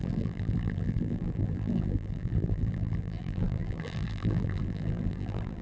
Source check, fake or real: fake